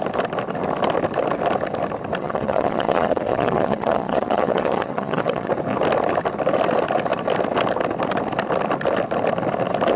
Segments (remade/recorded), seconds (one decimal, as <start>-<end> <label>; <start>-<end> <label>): 0.0-2.2 recorded; 2.2-5.5 remade; 5.5-10.0 recorded